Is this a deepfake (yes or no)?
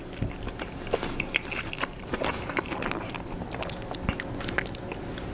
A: no